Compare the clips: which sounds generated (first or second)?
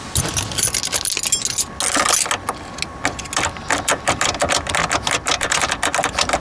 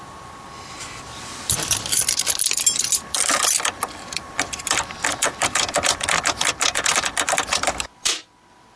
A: second